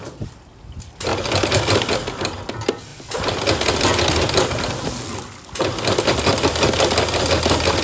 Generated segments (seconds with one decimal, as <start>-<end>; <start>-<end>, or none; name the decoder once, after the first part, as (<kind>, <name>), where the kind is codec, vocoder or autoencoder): none

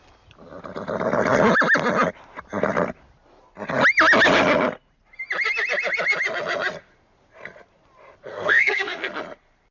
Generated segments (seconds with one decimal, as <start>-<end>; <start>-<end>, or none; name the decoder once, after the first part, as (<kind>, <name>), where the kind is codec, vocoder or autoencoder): 8.3-9.1 (codec, SNAC)